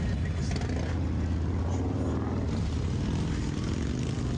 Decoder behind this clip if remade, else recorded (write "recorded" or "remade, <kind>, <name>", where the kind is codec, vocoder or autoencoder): recorded